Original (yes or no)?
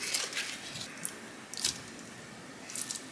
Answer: yes